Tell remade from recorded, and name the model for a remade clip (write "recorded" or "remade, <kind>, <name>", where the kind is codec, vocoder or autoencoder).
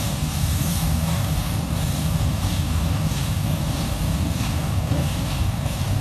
remade, codec, DAC